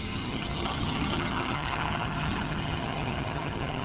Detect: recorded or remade remade